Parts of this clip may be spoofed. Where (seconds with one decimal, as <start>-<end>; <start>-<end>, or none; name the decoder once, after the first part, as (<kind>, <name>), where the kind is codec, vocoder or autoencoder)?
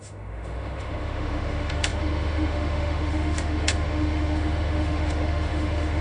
0.0-6.0 (autoencoder, DAC-VAE)